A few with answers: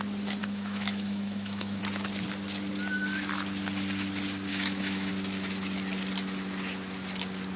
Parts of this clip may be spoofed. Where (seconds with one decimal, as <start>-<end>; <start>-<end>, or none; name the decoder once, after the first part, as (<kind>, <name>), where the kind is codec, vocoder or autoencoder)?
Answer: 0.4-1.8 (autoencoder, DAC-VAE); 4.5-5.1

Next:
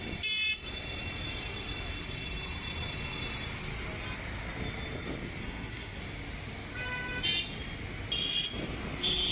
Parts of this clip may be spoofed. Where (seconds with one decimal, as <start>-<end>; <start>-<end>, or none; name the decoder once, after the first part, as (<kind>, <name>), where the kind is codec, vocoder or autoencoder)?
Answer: 5.4-6.0 (codec, SNAC)

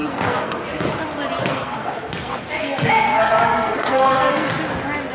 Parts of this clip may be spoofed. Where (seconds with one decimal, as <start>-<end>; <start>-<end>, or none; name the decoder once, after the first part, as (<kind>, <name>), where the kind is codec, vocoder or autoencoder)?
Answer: 0.0-0.6 (codec, SNAC); 1.4-4.5

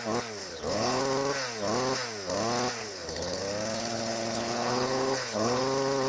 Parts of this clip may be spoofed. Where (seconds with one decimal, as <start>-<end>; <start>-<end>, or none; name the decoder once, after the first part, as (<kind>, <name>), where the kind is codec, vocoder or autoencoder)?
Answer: 0.4-1.0 (codec, HILCodec); 2.8-3.4; 3.8-5.6

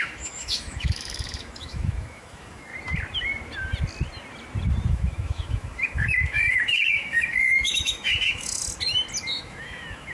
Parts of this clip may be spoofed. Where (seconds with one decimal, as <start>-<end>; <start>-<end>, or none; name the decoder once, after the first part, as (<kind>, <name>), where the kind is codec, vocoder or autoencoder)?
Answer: 0.0-2.7 (autoencoder, DAC-VAE); 4.9-8.6; 9.2-10.1